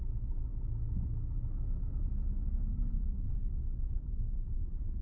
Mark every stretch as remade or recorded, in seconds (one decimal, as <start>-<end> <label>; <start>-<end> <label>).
0.0-0.5 remade; 0.5-1.9 recorded; 1.9-3.1 remade; 3.1-3.9 recorded; 3.9-5.0 remade